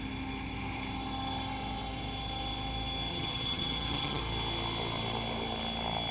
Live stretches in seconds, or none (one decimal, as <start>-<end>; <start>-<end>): 0.0-3.1; 4.2-6.1